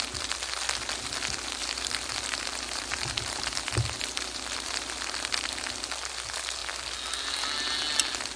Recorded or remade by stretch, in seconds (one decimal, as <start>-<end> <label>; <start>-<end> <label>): 0.0-1.6 recorded; 1.6-6.1 remade; 6.1-6.6 recorded; 6.6-7.8 remade; 7.8-8.4 recorded

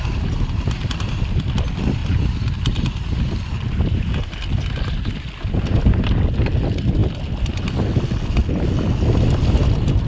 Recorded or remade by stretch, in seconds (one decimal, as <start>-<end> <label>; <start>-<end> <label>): 0.0-2.0 recorded; 2.0-2.5 remade; 2.5-10.1 recorded

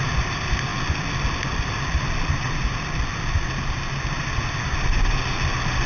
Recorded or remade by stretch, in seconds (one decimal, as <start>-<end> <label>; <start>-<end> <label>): 0.0-5.9 recorded